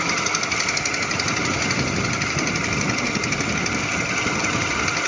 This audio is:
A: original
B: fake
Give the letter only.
A